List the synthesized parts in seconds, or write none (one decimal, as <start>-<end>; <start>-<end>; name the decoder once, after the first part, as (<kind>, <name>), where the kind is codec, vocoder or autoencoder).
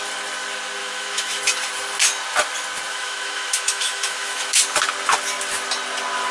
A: 0.8-1.4 (autoencoder, DAC-VAE); 2.9-4.6